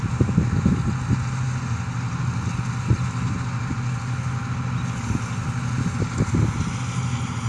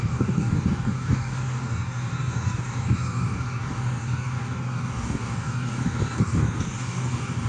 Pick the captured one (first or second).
first